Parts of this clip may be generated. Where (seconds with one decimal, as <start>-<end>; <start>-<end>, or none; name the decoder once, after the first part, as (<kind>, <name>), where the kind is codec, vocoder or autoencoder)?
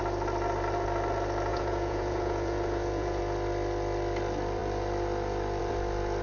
1.5-3.2 (vocoder, Vocos)